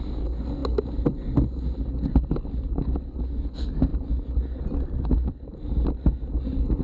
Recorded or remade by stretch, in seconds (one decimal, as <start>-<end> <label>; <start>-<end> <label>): 0.0-6.8 recorded